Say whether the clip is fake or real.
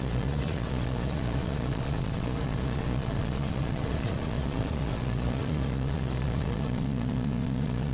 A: fake